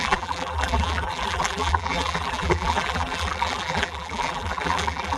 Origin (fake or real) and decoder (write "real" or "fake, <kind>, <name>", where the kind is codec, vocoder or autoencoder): fake, vocoder, BigVGAN v2